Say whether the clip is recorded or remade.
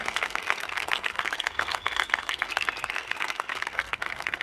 remade